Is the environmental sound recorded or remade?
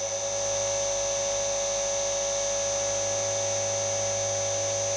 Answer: recorded